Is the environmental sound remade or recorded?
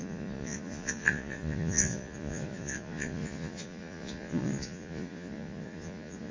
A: remade